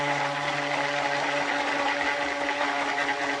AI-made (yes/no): no